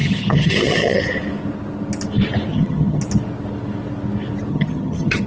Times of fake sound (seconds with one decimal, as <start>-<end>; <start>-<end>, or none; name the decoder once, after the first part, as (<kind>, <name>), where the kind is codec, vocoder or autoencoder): 0.0-1.0 (vocoder, HiFi-GAN); 2.5-3.0; 4.5-5.3